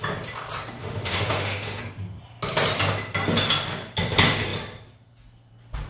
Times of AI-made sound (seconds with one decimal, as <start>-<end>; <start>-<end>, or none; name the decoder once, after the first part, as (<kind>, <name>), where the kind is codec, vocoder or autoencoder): 0.8-1.8 (autoencoder, DAC-VAE)